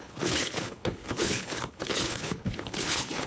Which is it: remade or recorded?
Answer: remade